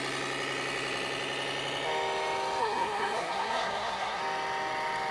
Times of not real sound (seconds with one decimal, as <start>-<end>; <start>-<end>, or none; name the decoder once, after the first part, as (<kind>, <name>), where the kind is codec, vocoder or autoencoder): 2.6-4.2 (codec, SNAC)